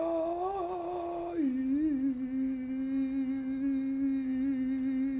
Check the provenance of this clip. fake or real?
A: real